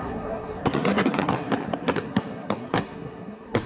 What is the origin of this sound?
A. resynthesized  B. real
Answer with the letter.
A